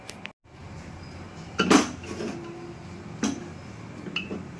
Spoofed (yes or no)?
no